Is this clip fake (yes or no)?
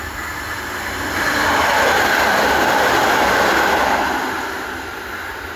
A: no